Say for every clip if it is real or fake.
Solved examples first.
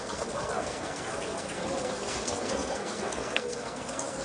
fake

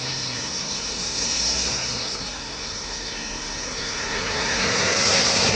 fake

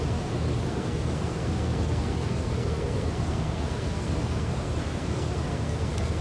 fake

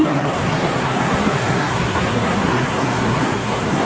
fake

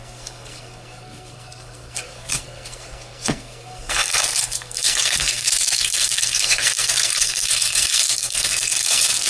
fake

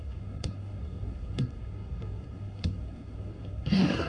fake